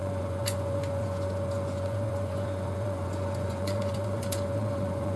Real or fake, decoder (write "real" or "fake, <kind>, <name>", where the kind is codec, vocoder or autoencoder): fake, vocoder, Vocos